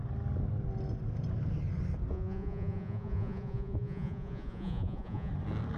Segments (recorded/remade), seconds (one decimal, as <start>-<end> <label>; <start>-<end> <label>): 0.0-2.1 recorded; 2.1-5.3 remade; 5.3-5.8 recorded